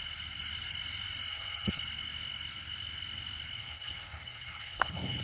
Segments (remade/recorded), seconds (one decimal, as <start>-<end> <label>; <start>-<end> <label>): 0.0-1.3 recorded; 1.3-1.8 remade; 1.8-3.6 recorded; 3.6-5.2 remade